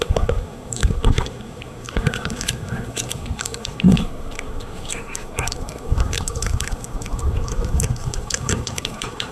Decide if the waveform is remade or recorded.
remade